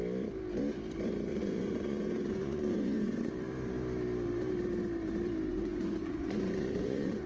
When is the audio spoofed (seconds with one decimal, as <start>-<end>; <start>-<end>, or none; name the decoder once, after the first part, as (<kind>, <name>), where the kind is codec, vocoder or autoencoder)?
1.3-3.3 (vocoder, Vocos); 5.5-7.3